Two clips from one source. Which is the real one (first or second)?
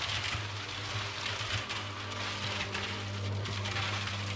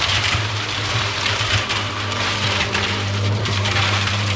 first